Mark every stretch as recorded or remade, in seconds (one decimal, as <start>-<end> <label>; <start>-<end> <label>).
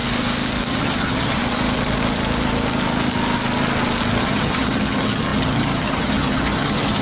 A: 0.0-0.7 recorded; 0.7-1.4 remade; 1.4-4.2 recorded; 4.2-7.0 remade